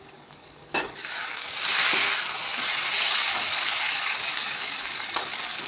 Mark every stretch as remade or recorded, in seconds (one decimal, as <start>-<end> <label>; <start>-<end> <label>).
0.0-1.5 remade; 1.5-3.2 recorded; 3.2-5.7 remade